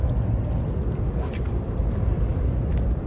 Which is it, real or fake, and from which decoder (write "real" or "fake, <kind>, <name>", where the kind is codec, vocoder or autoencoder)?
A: real